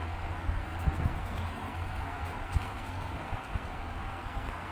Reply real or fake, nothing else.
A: fake